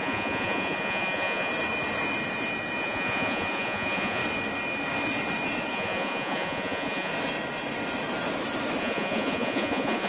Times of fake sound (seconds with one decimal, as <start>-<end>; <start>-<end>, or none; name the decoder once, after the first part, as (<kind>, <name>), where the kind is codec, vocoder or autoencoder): 0.0-1.5 (vocoder, Vocos); 2.8-4.2; 5.7-7.1; 8.8-10.1